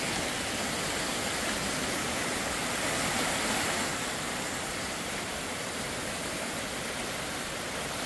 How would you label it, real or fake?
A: real